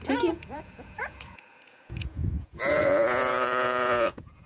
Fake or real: fake